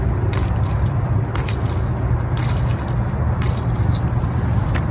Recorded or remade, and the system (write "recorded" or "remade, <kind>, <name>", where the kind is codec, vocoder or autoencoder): recorded